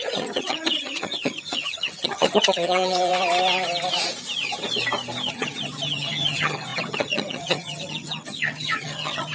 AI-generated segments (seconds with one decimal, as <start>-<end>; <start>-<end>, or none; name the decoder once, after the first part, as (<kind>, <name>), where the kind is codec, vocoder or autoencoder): 0.0-3.1 (vocoder, HiFi-GAN); 5.3-9.3

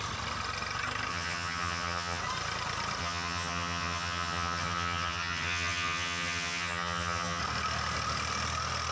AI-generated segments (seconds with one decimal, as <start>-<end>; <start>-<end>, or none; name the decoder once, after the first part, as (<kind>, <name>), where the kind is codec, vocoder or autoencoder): 1.1-2.2 (vocoder, HiFi-GAN); 3.0-7.4

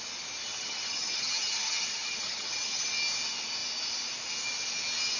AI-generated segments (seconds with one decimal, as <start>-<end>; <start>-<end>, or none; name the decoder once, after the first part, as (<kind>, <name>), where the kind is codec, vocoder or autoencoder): 0.5-2.9 (vocoder, HiFi-GAN)

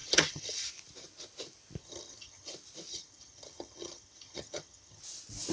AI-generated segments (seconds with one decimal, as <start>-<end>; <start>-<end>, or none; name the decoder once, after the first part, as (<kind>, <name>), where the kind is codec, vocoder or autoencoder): 0.0-0.7 (vocoder, HiFi-GAN); 1.8-2.5; 2.9-5.0

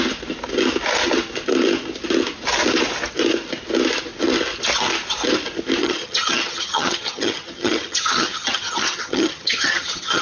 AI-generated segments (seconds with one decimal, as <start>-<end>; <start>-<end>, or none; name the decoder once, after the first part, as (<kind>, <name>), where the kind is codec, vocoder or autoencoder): 5.8-10.2 (vocoder, HiFi-GAN)